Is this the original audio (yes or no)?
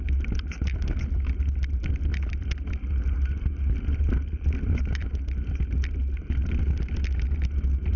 yes